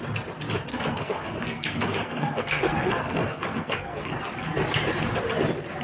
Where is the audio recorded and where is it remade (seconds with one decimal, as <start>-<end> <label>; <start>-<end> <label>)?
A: 0.0-0.7 recorded; 0.7-4.2 remade; 4.2-5.8 recorded